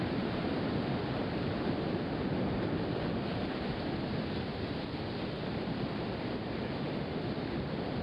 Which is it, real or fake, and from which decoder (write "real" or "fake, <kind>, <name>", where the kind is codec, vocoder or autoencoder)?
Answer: real